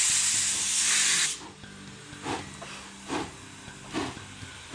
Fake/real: real